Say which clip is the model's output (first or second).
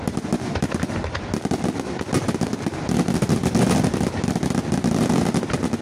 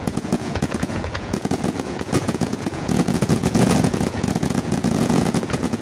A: second